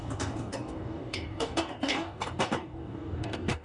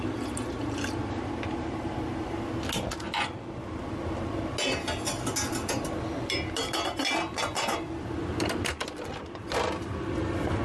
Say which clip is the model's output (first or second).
first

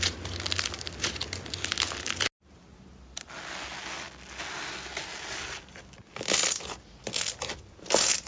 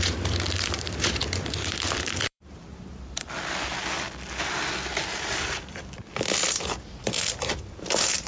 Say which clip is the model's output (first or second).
second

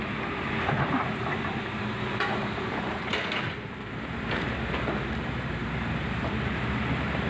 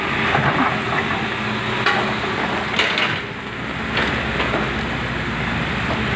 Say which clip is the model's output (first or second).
first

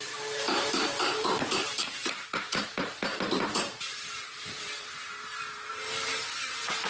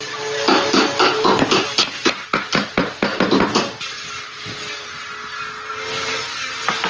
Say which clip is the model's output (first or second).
first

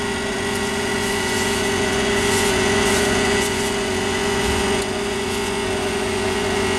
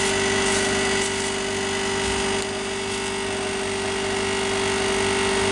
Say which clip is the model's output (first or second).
first